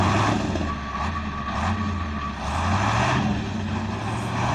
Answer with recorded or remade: recorded